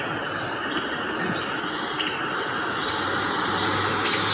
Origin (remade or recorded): recorded